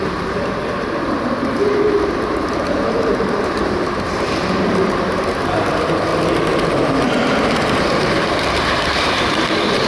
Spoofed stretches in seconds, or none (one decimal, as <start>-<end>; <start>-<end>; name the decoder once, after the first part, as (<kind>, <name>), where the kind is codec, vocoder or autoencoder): 0.0-6.1 (vocoder, BigVGAN v2); 7.8-9.9